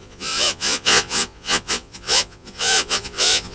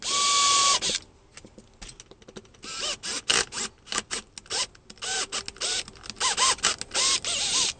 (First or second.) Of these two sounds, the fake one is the first